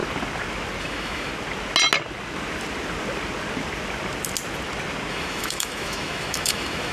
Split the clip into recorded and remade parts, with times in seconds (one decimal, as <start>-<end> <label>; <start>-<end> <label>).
0.0-0.8 recorded; 0.8-1.3 remade; 1.3-5.1 recorded; 5.1-6.9 remade